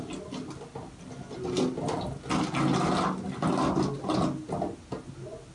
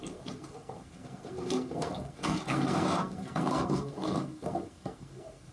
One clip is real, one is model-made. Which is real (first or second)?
first